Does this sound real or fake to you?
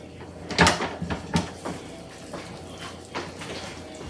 real